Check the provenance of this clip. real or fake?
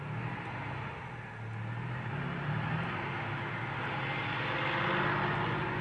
real